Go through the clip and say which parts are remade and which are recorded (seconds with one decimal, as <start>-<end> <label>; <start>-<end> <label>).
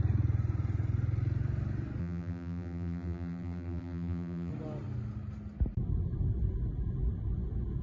0.0-2.0 recorded; 2.0-4.5 remade; 4.5-7.8 recorded